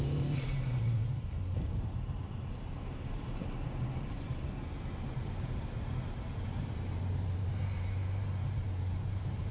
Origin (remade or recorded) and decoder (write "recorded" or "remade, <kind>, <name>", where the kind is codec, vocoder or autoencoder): remade, vocoder, BigVGAN v2